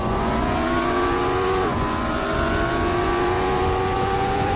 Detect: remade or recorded remade